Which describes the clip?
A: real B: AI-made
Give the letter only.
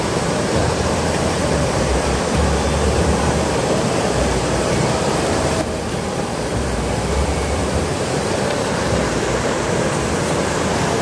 B